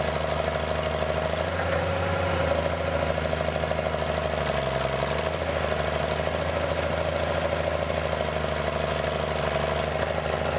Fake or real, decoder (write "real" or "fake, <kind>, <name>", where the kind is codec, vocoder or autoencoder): real